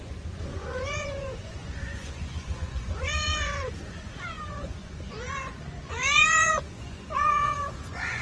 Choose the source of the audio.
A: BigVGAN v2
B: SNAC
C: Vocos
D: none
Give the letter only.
C